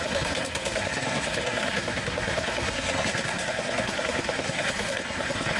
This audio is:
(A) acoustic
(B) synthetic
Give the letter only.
B